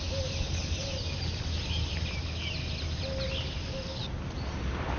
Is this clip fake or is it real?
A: real